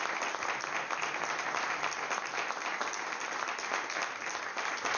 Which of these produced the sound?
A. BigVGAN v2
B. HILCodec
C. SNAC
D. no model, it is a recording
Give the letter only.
D